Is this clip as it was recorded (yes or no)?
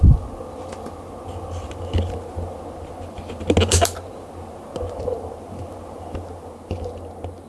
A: yes